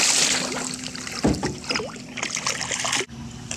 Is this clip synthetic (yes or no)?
no